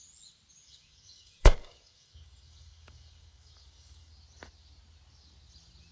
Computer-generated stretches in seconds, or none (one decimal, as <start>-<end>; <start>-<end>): 0.6-4.1